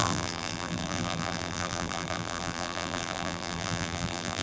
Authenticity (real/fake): fake